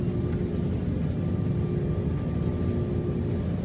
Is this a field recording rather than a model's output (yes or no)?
yes